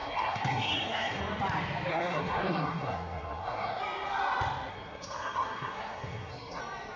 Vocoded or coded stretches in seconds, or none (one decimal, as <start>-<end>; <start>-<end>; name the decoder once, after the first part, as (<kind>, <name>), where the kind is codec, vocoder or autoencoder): 0.0-1.2 (codec, SNAC); 1.9-3.8; 4.7-6.6